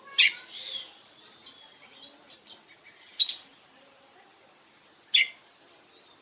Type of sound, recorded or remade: recorded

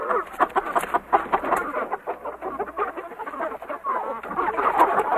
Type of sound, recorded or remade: recorded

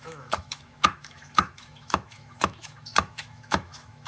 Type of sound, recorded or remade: remade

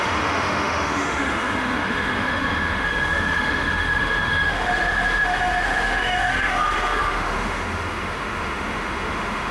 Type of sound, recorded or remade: remade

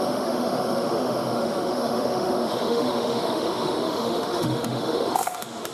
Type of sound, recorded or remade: remade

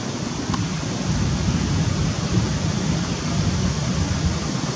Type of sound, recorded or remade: recorded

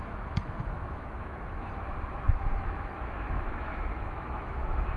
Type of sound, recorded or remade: remade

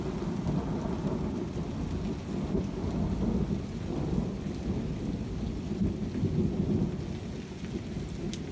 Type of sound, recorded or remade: recorded